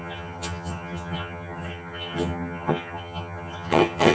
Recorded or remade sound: remade